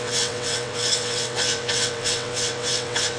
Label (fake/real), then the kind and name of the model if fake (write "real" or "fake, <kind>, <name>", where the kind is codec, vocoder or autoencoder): fake, vocoder, WaveNeXt